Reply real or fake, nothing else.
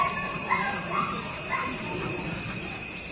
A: fake